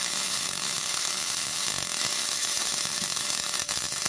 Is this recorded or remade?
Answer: remade